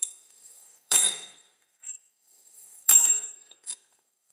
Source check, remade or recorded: remade